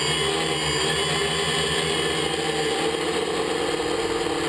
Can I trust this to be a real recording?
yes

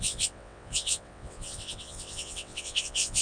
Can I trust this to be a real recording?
no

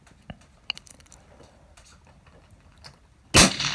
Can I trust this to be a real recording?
yes